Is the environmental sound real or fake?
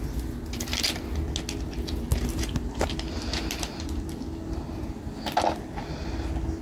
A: real